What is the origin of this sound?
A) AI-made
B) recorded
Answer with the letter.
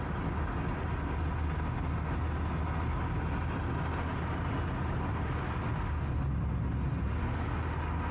B